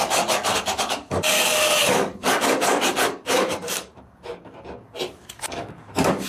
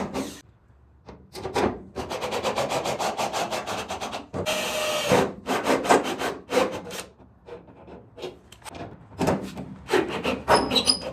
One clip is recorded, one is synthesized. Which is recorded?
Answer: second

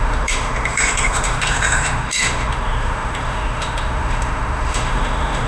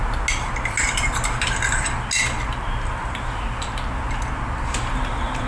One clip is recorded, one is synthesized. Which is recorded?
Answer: second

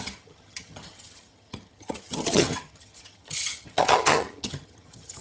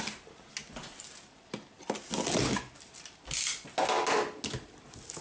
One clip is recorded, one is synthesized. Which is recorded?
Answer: second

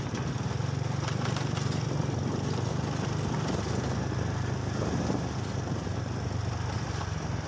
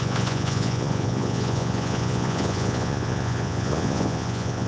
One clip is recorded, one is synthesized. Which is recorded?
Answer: first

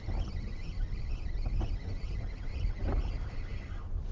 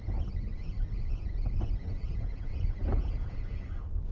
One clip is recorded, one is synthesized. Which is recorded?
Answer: first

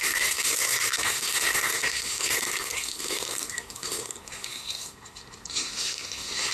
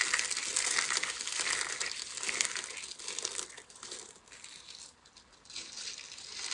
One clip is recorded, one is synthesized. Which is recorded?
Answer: second